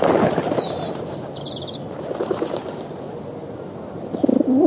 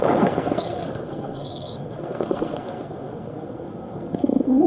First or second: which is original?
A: first